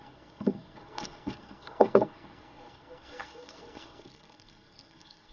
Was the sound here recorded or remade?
remade